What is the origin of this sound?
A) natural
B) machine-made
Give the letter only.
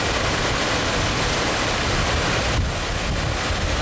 A